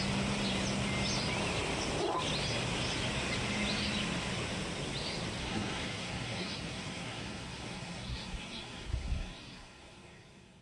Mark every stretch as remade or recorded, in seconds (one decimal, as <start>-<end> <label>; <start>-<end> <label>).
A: 0.0-5.4 recorded; 5.4-10.6 remade